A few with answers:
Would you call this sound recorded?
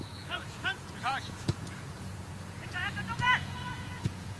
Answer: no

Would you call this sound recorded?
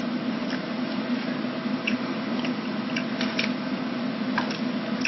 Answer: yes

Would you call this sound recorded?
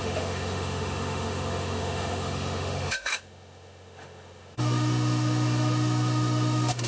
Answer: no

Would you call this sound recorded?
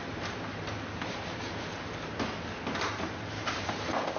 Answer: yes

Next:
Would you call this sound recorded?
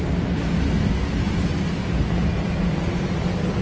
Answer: yes